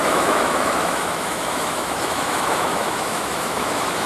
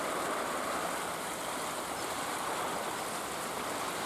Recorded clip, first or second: second